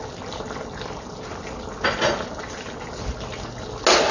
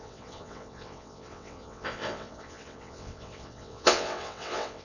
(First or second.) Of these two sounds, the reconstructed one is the second